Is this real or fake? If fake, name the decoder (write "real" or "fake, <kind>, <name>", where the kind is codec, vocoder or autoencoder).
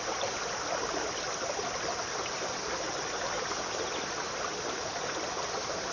real